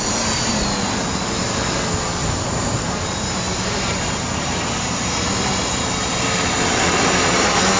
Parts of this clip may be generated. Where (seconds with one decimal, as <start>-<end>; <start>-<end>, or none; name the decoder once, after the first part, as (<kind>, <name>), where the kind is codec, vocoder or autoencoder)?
0.0-0.6 (vocoder, BigVGAN v2); 2.2-5.4